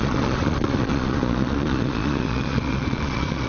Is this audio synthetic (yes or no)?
yes